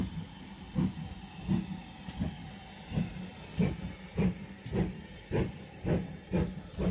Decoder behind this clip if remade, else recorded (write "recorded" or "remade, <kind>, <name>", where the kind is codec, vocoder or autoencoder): recorded